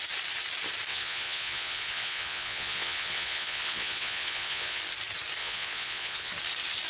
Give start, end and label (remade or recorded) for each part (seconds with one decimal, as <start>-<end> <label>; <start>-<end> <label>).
0.0-0.9 recorded; 0.9-4.8 remade; 4.8-5.4 recorded; 5.4-6.3 remade; 6.3-6.9 recorded